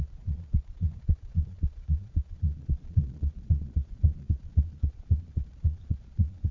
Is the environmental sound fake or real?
fake